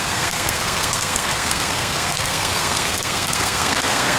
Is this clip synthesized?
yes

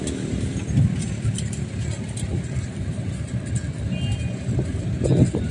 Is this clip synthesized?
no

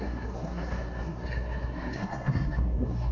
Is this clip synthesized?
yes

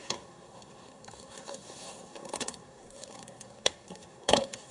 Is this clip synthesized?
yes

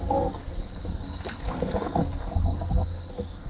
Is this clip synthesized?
yes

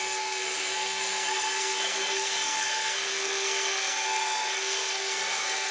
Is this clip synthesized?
yes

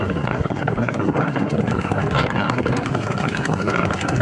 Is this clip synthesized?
yes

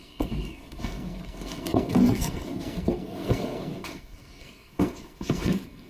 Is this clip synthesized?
yes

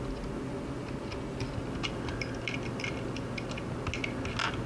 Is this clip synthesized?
no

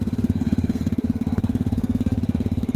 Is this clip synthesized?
yes